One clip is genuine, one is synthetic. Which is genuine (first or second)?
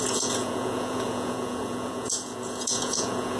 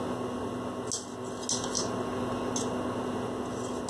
second